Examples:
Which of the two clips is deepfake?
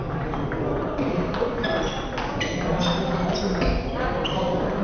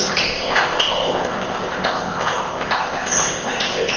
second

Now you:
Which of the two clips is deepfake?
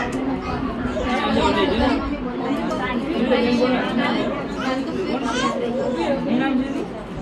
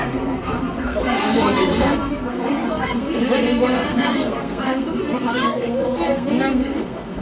second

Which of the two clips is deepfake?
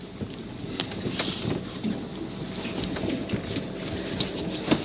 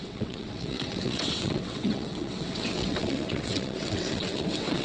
second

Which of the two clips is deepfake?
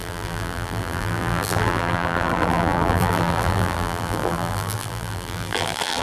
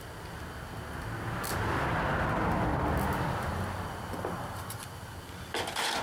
first